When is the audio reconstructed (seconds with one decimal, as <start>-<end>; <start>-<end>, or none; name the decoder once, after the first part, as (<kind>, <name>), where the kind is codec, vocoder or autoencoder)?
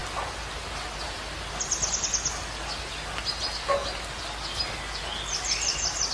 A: none